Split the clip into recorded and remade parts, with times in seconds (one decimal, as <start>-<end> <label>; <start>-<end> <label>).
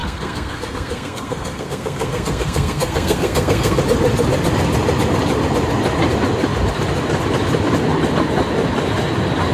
0.0-3.8 remade; 3.8-9.5 recorded